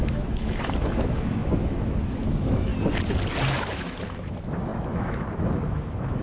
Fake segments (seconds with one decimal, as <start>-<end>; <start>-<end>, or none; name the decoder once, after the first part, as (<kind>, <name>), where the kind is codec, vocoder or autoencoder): 0.0-2.7 (autoencoder, DAC-VAE); 3.5-6.2

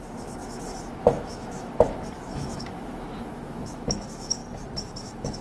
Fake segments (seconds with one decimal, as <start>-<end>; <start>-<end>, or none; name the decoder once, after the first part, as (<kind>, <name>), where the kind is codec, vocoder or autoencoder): 0.0-4.4 (autoencoder, DAC-VAE); 5.0-5.4

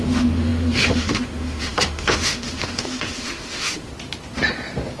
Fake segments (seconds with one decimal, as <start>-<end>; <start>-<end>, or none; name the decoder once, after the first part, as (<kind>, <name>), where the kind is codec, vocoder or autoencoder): 0.0-3.9 (autoencoder, DAC-VAE)

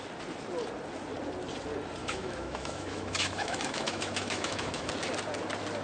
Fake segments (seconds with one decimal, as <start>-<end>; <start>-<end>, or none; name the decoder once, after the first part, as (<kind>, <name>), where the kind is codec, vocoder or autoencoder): 2.0-4.9 (autoencoder, DAC-VAE)